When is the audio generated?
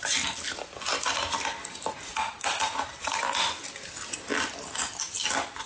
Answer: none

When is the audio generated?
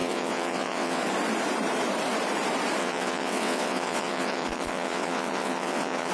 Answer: 0.0-1.0 (vocoder, WaveNeXt); 2.8-6.1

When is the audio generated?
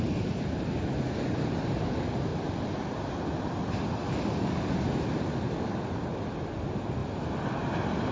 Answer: none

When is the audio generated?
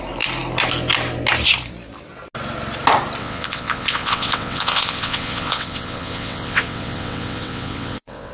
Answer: 3.2-8.3 (vocoder, WaveNeXt)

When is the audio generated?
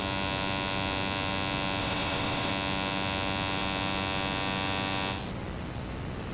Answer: 1.8-2.5 (vocoder, WaveNeXt)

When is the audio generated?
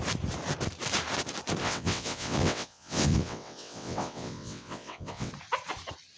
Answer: 1.6-5.3 (vocoder, WaveNeXt)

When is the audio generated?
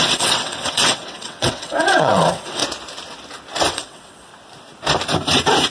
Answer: 0.0-2.6 (vocoder, WaveNeXt); 3.7-4.3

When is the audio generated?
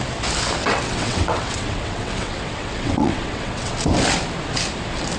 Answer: 0.6-3.7 (vocoder, WaveNeXt)